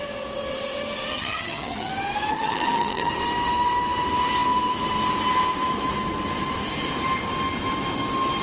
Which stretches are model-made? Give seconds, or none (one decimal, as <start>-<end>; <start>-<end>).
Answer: 1.1-1.9; 2.3-3.1